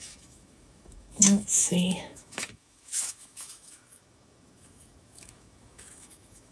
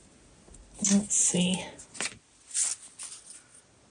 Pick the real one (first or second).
second